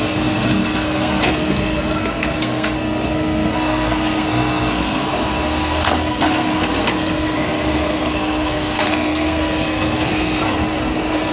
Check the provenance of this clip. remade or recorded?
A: remade